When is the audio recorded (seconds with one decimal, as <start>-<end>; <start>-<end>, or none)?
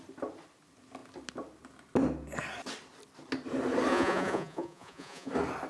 0.0-3.9; 5.3-5.7